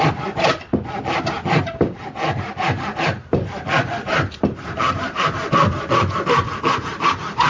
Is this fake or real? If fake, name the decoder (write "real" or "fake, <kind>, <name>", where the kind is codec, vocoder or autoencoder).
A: fake, vocoder, BigVGAN v2